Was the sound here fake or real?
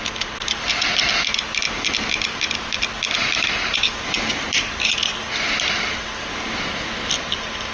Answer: real